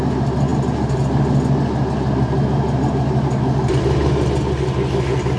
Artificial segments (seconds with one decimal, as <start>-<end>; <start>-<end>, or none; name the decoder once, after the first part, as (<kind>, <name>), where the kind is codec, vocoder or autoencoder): none